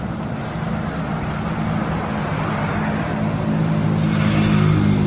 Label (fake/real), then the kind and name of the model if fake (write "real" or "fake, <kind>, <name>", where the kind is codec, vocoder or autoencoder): real